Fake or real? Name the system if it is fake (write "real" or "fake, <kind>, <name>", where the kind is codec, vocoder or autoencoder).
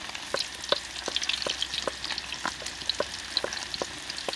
real